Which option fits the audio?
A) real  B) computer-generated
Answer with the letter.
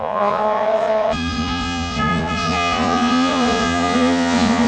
B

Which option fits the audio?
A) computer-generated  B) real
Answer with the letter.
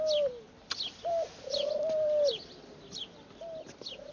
B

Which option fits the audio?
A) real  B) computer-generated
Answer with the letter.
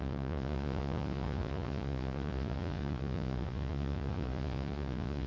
B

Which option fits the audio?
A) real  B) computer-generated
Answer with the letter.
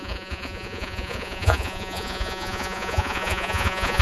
B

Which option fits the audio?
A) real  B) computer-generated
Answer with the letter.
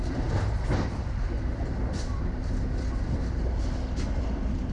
A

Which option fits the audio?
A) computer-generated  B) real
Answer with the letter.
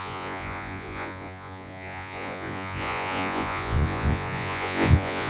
A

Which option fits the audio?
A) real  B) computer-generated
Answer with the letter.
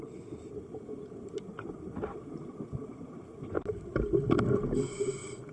A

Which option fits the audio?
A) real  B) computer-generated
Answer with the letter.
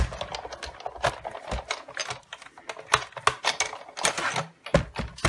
A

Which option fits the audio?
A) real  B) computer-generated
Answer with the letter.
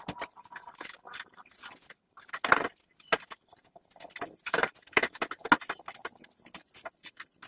A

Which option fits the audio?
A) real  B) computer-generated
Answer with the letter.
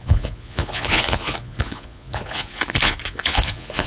B